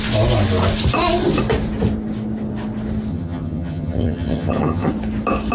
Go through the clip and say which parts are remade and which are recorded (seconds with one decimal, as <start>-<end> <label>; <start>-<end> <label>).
0.0-3.1 recorded; 3.1-4.9 remade; 4.9-5.5 recorded